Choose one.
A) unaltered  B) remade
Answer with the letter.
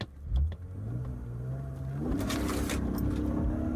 A